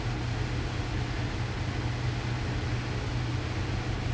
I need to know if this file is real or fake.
real